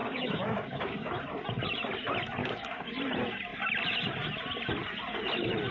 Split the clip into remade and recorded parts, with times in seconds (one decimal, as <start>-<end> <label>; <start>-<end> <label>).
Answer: 0.0-1.1 remade; 1.1-2.4 recorded; 2.4-3.0 remade; 3.0-5.7 recorded